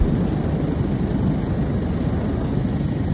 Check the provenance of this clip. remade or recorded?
recorded